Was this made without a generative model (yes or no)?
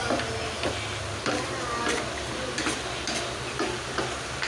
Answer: yes